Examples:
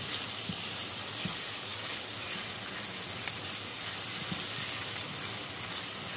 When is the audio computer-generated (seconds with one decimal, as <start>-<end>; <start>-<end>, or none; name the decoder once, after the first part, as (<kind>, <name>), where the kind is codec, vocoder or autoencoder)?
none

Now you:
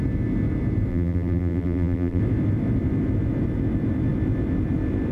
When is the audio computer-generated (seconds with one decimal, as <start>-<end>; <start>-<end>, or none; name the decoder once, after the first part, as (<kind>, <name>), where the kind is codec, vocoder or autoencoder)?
0.9-2.2 (vocoder, BigVGAN v2)

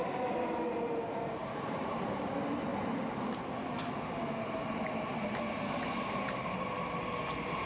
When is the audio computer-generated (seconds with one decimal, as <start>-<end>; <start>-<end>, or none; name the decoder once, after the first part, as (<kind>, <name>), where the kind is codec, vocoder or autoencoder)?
1.4-2.3 (vocoder, BigVGAN v2)